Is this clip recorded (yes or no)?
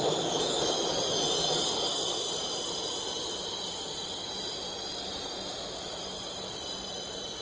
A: yes